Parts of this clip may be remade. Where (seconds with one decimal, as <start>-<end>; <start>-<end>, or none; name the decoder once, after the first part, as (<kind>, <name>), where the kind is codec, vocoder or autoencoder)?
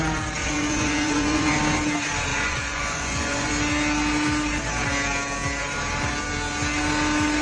0.4-1.5 (vocoder, Vocos); 2.3-3.5